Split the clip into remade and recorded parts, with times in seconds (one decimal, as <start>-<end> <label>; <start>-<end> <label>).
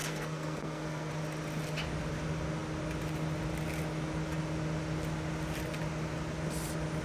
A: 0.0-1.1 remade; 1.1-7.0 recorded